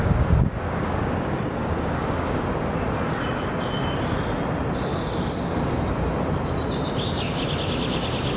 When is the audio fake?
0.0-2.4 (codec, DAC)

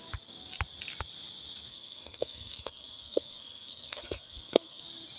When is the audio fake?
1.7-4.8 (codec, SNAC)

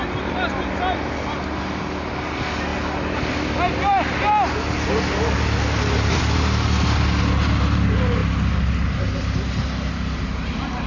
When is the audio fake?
none

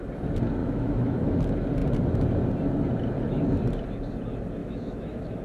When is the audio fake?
0.6-1.4 (autoencoder, DAC-VAE); 4.6-5.4

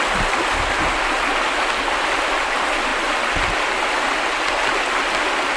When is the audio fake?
none

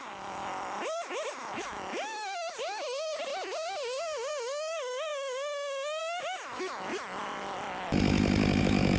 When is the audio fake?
0.0-3.3 (autoencoder, DAC-VAE); 4.3-6.9; 8.6-9.0

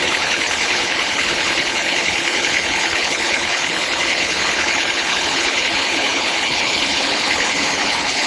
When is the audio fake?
0.0-8.3 (codec, HILCodec)